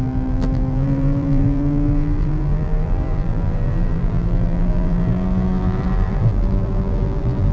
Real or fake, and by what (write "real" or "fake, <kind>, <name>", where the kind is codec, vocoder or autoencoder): fake, vocoder, BigVGAN v2